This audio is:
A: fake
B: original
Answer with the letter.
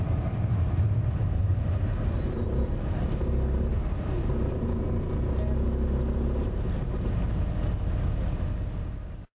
B